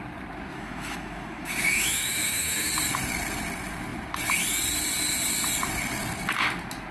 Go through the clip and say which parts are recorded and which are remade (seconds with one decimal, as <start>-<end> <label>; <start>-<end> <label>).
0.0-0.5 recorded; 0.5-2.7 remade; 2.7-6.9 recorded